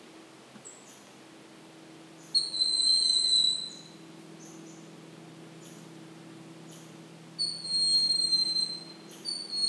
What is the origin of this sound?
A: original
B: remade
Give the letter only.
A